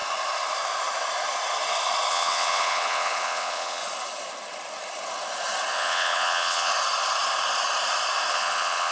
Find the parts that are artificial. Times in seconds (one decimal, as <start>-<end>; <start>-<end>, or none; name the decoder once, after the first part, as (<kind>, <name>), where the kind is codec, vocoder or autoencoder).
2.1-3.8 (vocoder, WaveNeXt); 5.7-6.7; 8.3-8.9